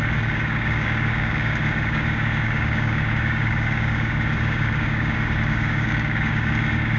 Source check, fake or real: fake